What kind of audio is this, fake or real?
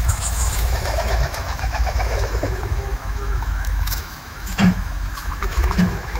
fake